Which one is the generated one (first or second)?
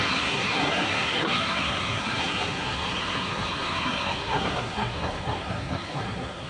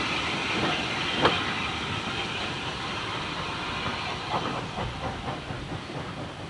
first